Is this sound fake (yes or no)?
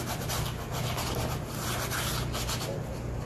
no